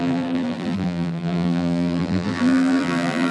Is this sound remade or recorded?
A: remade